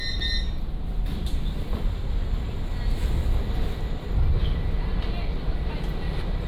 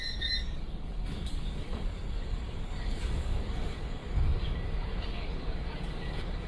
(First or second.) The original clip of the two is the first